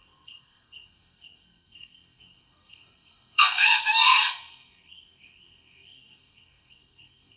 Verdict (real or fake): fake